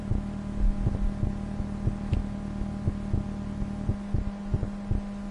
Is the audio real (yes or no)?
yes